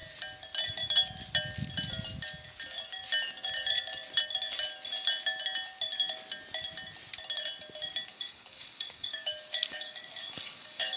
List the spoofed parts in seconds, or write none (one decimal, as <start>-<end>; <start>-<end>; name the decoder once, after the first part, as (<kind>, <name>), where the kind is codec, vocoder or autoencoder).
8.1-11.0 (codec, DAC)